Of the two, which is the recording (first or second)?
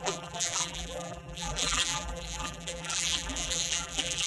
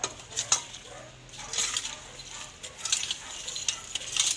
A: second